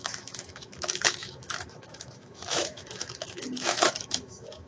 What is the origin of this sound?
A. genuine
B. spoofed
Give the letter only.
B